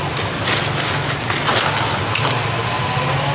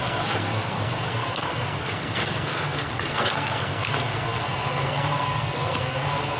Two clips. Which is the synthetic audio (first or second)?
second